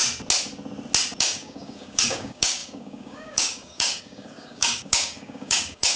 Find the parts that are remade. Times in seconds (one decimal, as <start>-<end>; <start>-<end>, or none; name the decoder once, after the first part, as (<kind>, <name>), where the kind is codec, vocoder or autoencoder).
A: 1.2-6.0 (codec, DAC)